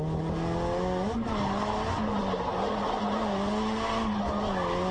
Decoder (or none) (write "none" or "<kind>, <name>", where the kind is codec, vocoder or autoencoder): none